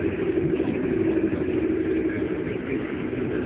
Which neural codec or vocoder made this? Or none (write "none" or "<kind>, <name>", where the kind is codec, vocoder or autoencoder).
none